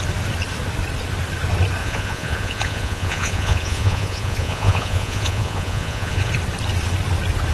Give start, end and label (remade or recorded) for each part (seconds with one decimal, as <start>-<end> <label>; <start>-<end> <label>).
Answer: 0.0-1.8 recorded; 1.8-6.3 remade; 6.3-7.5 recorded